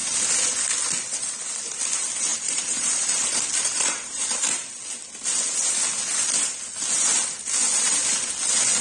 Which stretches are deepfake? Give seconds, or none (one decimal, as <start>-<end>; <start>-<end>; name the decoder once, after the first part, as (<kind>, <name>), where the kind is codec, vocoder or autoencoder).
2.3-4.7 (vocoder, BigVGAN v2)